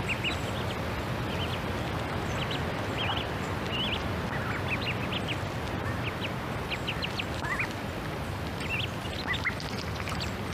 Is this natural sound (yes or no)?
yes